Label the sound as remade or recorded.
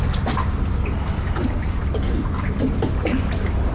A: recorded